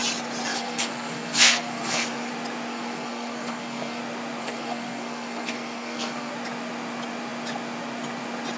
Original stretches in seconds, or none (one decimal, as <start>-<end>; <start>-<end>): 0.0-0.5; 2.3-2.7; 4.0-4.4; 6.3-8.6